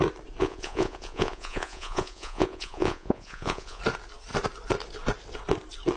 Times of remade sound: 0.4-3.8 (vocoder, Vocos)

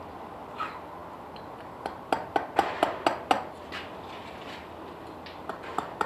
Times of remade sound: none